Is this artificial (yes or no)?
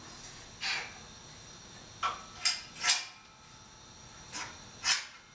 no